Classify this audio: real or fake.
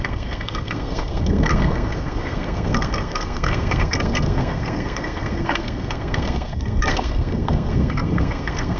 fake